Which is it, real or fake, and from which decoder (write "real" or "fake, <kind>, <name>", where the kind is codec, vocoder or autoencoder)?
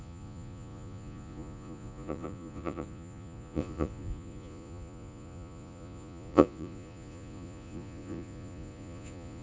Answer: fake, vocoder, Vocos